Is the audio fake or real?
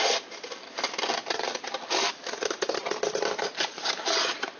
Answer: fake